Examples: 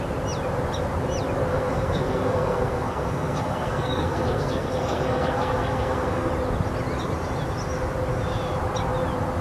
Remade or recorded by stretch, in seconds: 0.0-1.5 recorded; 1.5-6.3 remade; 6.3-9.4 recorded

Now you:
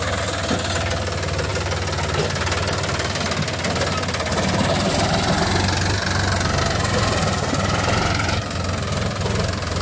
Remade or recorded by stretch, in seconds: 0.0-9.8 recorded

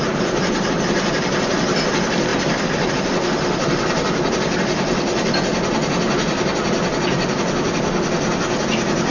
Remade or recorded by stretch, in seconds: 0.0-9.1 recorded

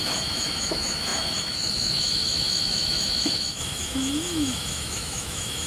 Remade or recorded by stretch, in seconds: 0.0-5.7 remade

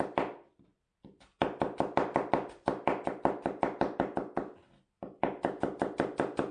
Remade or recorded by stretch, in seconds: 0.0-6.5 recorded

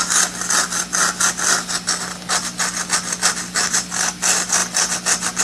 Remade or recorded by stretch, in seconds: 0.0-5.4 recorded